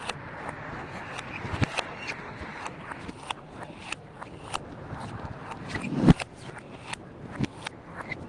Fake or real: real